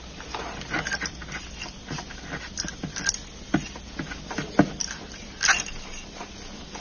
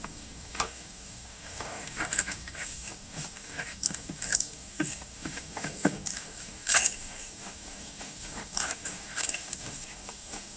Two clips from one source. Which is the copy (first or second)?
second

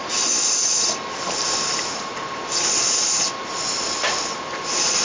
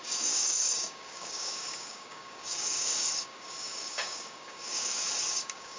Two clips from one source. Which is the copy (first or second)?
second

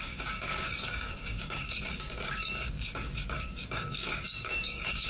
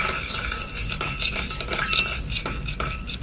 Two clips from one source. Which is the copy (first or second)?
first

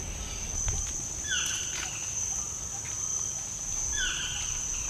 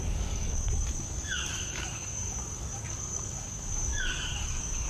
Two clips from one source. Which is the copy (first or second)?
second